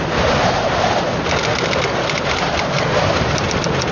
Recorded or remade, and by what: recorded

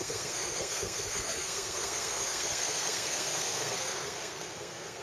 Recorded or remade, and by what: remade, codec, SNAC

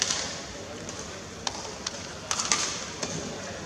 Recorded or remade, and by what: recorded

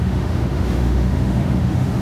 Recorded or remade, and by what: remade, autoencoder, DAC-VAE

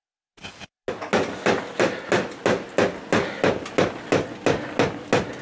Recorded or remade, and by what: recorded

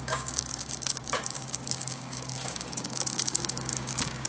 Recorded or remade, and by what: remade, codec, DAC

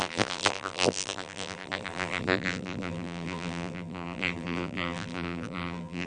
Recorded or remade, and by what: remade, vocoder, BigVGAN v2